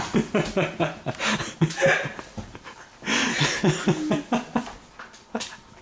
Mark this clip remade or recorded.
recorded